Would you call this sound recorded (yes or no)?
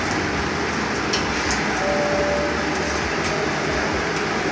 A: yes